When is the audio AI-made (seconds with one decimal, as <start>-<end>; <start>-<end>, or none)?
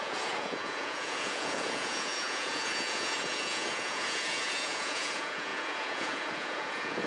0.0-7.1